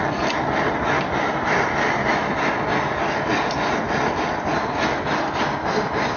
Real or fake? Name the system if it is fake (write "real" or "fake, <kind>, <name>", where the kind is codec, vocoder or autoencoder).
real